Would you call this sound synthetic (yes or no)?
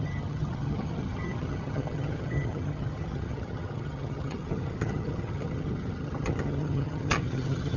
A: yes